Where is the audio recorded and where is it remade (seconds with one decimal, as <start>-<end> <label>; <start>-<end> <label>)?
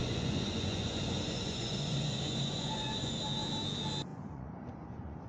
0.0-3.2 remade; 3.2-4.1 recorded; 4.1-5.3 remade